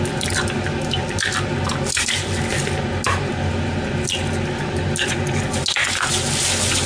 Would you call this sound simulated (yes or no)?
no